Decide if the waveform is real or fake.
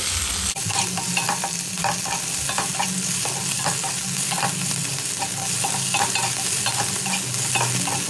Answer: real